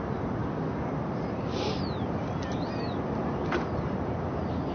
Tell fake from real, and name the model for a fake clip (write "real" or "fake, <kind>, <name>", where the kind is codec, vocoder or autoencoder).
fake, vocoder, BigVGAN v2